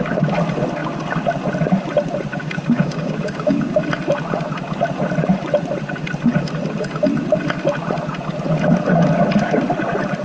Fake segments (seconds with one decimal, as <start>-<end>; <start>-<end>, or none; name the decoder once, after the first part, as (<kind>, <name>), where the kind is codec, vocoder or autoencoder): 2.3-3.8 (codec, DAC)